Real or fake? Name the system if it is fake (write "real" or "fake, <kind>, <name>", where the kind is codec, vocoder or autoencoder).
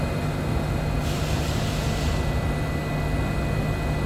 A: real